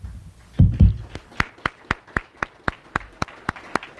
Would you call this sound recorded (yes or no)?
yes